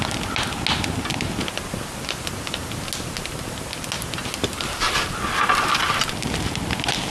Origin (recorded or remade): recorded